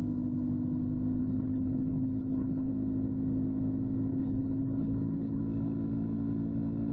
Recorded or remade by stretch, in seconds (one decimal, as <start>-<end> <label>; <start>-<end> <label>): 0.0-1.2 recorded; 1.2-2.7 remade; 2.7-4.1 recorded; 4.1-5.4 remade; 5.4-6.9 recorded